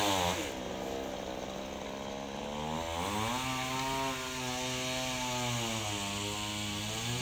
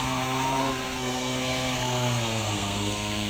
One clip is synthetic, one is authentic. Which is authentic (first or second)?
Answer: first